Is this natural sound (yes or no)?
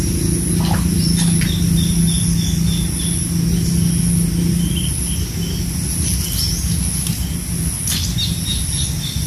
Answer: yes